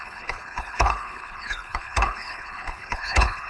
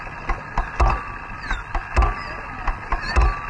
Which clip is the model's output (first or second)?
first